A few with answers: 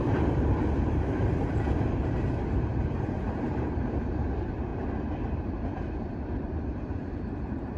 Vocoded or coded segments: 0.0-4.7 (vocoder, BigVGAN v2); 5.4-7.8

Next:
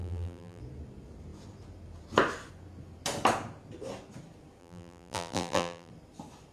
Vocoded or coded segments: 0.0-0.6 (vocoder, BigVGAN v2); 4.6-5.9

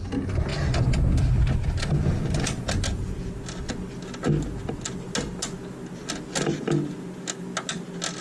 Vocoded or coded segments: none

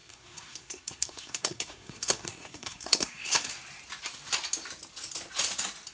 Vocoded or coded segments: 0.0-3.5 (codec, SNAC)